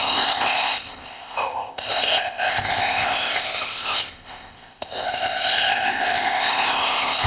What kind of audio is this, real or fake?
fake